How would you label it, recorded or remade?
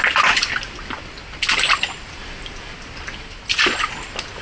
recorded